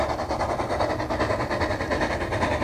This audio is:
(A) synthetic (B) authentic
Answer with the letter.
B